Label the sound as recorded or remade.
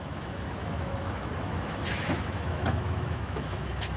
remade